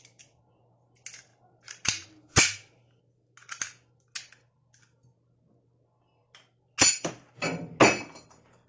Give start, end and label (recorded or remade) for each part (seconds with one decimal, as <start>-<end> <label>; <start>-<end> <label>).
0.0-1.3 recorded; 1.3-3.0 remade; 3.0-8.7 recorded